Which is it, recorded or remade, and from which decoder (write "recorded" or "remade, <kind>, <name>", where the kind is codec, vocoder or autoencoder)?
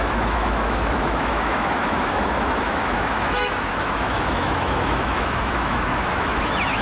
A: remade, autoencoder, DAC-VAE